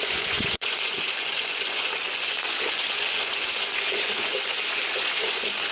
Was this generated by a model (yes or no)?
yes